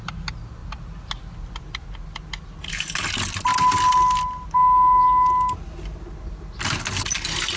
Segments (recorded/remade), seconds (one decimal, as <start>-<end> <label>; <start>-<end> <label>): 0.0-7.6 recorded